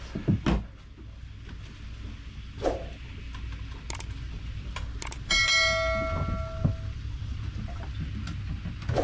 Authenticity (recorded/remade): recorded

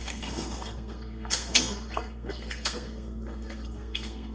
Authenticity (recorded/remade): remade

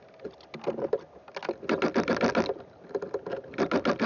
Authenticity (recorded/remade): recorded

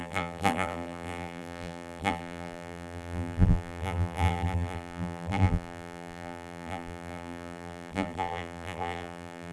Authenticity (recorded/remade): remade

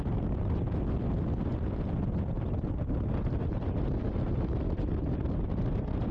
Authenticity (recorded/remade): recorded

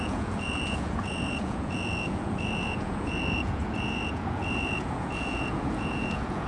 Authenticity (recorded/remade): remade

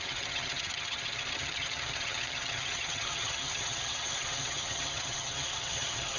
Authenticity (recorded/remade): remade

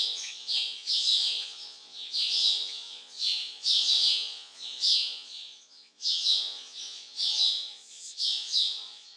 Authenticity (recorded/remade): remade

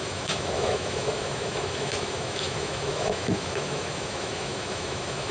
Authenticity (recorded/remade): remade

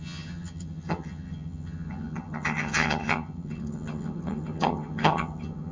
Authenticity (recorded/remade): remade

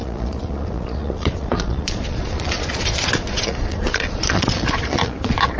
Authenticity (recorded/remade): remade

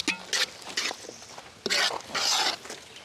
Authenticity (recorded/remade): recorded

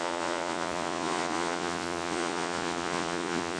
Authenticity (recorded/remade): remade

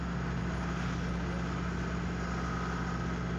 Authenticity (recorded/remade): recorded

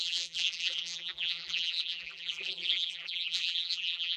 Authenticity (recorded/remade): remade